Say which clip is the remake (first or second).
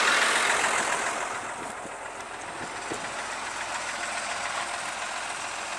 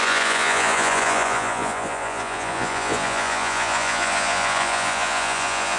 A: second